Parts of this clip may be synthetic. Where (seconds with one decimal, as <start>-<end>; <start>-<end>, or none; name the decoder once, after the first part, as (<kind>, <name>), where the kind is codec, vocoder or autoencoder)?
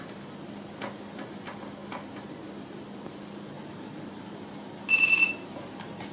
none